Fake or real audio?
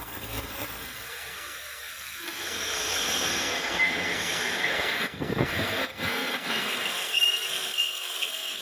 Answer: fake